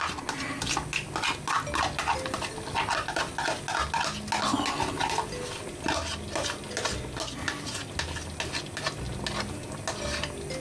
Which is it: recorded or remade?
recorded